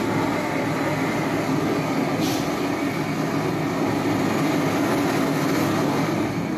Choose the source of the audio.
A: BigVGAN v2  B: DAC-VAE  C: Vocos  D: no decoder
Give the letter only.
D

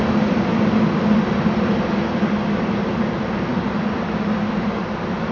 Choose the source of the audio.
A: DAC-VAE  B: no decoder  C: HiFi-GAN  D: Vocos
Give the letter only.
B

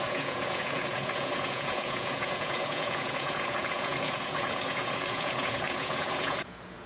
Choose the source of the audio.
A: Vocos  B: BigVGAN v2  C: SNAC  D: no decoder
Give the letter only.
A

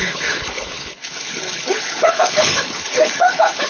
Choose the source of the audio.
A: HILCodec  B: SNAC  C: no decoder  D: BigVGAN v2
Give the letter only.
A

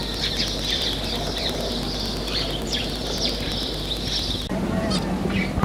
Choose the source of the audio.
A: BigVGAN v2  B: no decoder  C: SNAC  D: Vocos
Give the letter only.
A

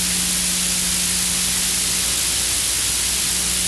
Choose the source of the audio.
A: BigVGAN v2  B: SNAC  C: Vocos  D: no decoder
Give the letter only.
D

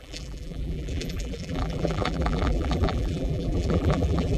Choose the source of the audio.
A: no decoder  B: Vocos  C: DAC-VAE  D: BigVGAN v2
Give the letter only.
D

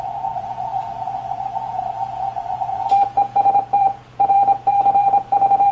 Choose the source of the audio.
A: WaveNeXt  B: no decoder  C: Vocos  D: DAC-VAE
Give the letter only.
C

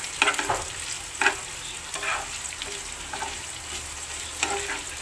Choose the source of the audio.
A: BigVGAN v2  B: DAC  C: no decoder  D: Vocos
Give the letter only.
C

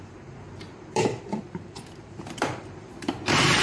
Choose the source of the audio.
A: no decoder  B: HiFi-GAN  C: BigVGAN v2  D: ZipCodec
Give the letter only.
C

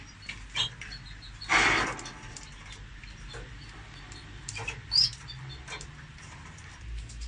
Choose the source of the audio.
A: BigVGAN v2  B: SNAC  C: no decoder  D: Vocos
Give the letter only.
C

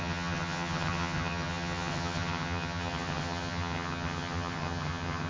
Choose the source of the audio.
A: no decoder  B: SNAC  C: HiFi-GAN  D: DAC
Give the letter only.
C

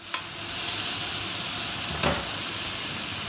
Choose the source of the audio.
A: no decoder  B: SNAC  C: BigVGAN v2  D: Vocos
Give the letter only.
A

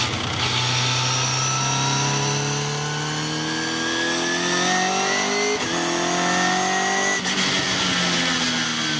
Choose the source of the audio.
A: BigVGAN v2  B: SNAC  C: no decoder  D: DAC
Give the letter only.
C